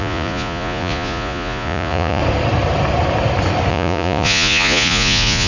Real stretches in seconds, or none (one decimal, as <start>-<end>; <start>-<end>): 2.2-3.7